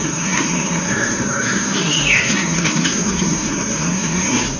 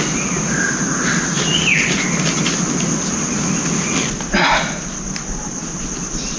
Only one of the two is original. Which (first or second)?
second